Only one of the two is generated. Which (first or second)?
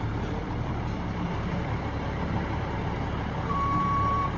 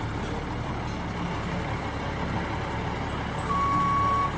first